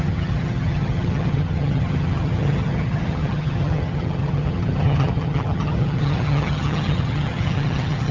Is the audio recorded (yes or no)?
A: no